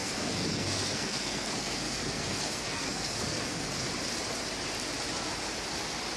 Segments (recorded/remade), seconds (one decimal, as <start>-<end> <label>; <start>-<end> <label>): 0.0-3.7 remade; 3.7-6.2 recorded